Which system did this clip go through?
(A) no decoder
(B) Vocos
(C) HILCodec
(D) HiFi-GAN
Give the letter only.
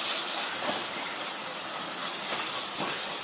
A